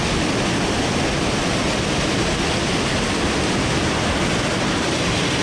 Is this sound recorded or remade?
recorded